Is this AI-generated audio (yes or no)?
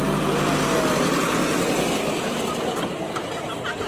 no